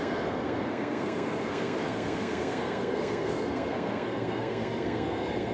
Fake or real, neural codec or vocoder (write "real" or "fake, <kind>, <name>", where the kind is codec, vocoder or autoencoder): fake, codec, SNAC